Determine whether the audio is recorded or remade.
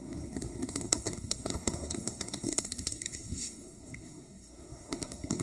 remade